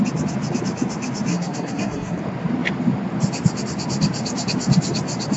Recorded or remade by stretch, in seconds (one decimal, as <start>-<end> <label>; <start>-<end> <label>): 0.0-1.3 recorded; 1.3-2.2 remade; 2.2-5.4 recorded